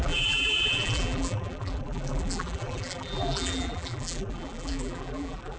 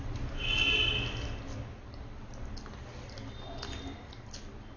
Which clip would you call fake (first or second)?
first